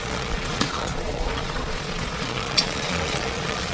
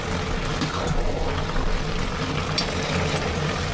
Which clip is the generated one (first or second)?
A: first